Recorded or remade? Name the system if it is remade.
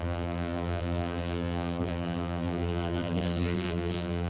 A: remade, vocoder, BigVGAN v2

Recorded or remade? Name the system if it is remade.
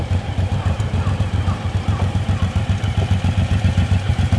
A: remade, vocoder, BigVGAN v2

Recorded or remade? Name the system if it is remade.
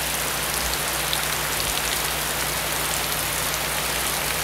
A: recorded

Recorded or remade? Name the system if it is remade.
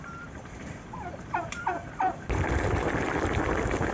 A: remade, vocoder, BigVGAN v2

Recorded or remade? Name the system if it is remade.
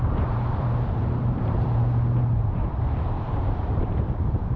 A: remade, vocoder, BigVGAN v2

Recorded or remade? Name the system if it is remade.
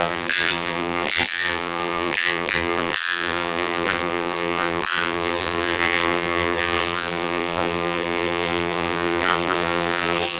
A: remade, vocoder, BigVGAN v2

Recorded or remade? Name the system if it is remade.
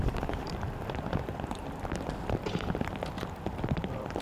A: remade, vocoder, BigVGAN v2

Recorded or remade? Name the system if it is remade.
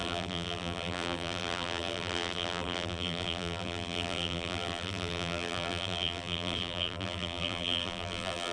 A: remade, vocoder, BigVGAN v2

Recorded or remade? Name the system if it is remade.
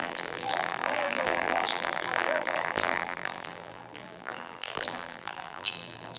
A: remade, vocoder, BigVGAN v2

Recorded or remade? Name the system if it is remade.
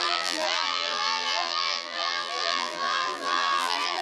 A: remade, vocoder, BigVGAN v2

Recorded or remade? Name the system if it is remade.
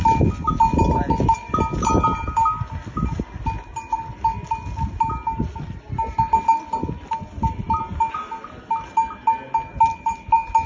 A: recorded